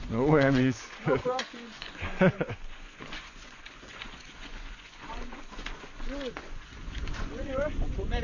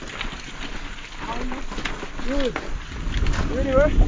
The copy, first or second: first